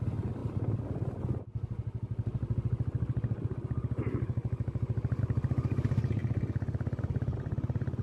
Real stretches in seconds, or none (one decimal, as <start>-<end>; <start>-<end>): 0.0-8.0